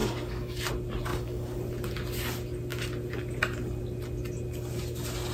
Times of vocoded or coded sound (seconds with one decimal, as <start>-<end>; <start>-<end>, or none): 0.0-0.7; 1.1-1.6